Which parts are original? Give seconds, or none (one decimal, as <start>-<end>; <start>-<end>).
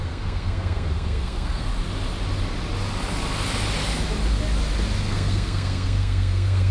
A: 1.7-5.0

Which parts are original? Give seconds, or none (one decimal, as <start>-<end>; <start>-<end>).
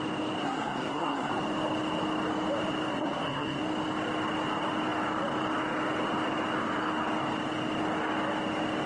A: 0.0-0.4; 1.3-2.9; 3.6-8.9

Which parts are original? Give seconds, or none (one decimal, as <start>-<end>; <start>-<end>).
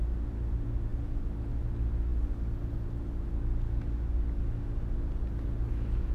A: 0.0-6.1